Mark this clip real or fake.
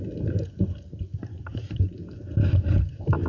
real